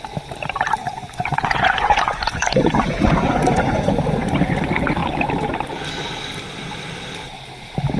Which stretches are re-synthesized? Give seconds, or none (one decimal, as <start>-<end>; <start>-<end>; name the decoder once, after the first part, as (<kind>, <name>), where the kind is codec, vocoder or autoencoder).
0.8-4.0 (vocoder, Vocos)